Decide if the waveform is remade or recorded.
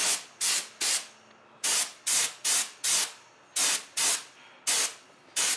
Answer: recorded